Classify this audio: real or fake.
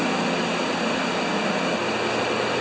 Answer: real